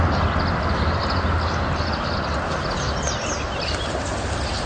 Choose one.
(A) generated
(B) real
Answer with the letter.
B